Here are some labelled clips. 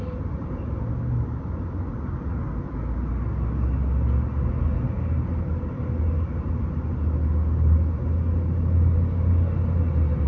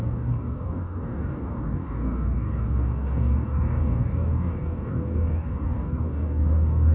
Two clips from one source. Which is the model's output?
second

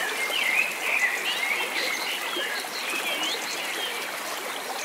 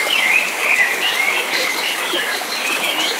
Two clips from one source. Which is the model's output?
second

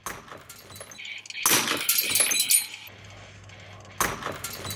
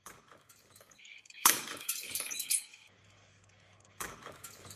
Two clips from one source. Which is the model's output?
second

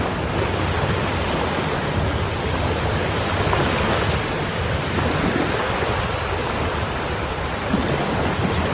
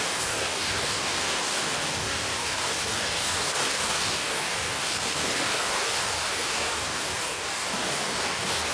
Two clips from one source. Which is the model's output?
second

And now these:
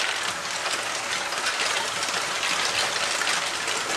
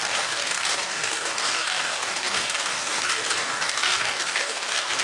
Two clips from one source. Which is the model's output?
second